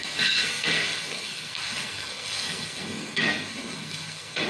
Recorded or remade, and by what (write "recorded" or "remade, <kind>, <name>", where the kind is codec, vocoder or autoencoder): remade, codec, SNAC